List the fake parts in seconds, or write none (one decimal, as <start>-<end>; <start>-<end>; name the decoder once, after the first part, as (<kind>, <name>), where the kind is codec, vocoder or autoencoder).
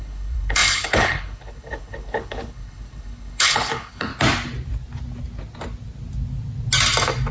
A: 0.0-4.1 (codec, HILCodec)